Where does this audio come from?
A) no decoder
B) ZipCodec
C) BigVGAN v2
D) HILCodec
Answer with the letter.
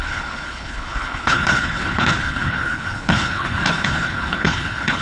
D